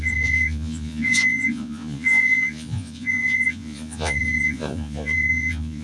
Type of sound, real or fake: fake